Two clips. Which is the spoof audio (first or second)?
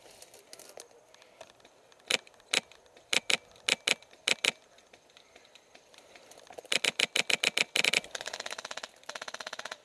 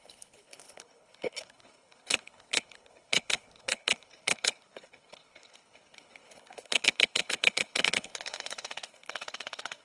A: second